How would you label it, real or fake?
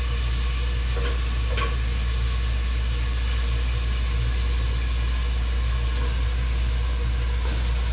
real